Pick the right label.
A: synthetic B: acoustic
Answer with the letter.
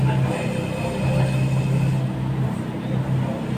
B